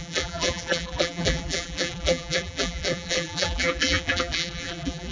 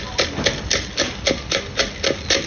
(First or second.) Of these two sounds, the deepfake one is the first